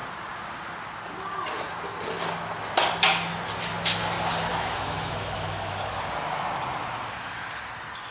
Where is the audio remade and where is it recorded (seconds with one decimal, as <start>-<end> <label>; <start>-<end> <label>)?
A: 0.0-4.5 recorded; 4.5-5.9 remade; 5.9-8.1 recorded